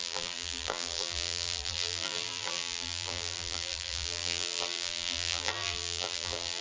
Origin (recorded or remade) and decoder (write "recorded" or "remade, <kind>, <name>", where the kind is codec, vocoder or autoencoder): remade, vocoder, BigVGAN v2